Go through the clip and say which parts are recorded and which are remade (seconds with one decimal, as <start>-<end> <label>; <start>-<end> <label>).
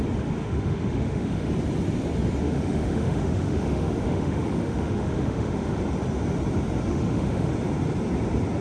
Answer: 0.0-0.4 recorded; 0.4-1.5 remade; 1.5-2.4 recorded; 2.4-5.8 remade; 5.8-6.9 recorded; 6.9-7.5 remade; 7.5-8.6 recorded